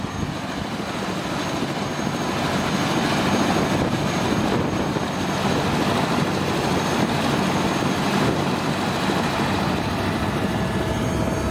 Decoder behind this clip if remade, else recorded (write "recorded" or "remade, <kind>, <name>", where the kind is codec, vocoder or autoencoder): recorded